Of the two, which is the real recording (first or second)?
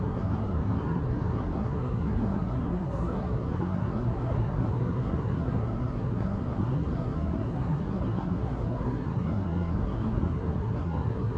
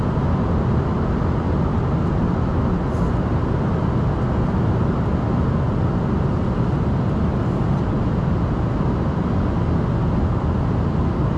second